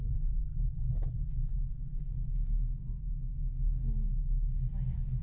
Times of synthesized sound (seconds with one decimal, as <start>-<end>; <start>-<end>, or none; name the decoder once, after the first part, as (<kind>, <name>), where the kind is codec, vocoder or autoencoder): 0.0-2.3 (vocoder, BigVGAN v2)